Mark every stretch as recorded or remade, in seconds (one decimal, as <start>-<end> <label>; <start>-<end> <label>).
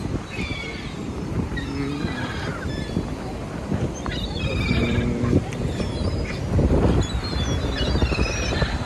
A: 0.0-8.9 recorded